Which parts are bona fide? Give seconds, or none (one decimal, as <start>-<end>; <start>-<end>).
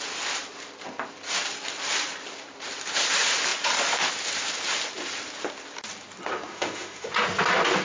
0.0-6.5; 7.1-7.8